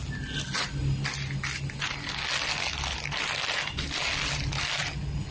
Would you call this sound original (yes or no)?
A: yes